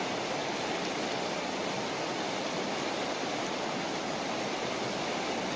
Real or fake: real